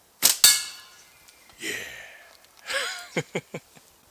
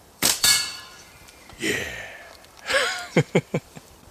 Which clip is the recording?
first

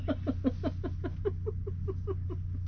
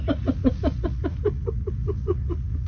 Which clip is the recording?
first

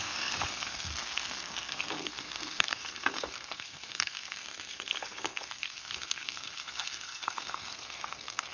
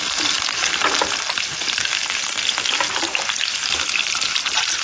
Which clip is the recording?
second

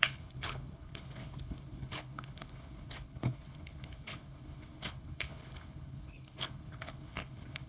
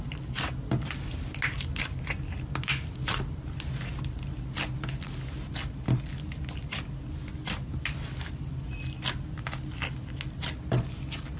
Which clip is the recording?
second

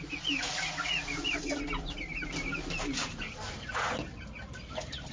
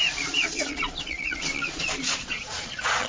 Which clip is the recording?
first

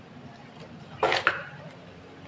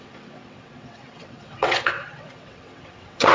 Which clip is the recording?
first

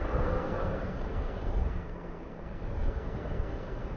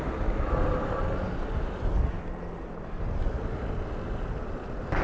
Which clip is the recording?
second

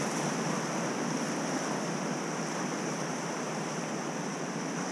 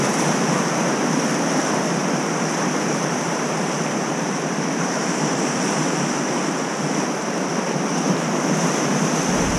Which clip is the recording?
first